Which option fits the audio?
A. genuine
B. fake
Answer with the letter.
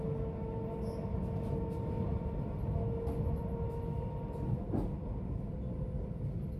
A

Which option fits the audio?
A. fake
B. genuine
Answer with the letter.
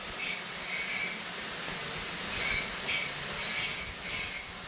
B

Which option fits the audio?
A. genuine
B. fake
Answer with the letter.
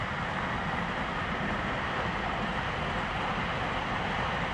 A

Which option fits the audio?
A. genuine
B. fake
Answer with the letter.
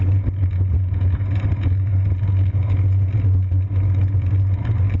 A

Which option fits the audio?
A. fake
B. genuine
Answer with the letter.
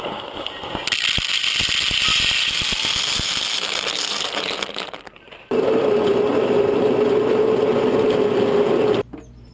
B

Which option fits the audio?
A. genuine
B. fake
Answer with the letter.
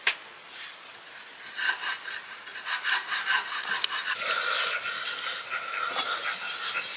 A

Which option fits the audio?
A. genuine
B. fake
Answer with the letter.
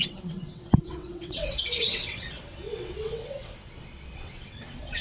B